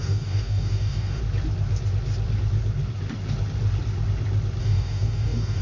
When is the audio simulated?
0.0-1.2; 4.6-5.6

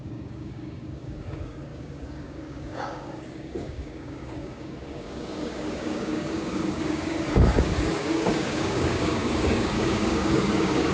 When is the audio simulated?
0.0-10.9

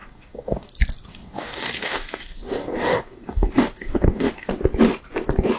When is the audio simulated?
0.0-0.7; 1.1-4.5